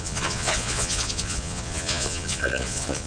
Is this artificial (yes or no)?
yes